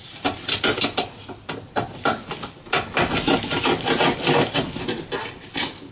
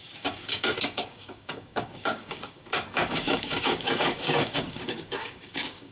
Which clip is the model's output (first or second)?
second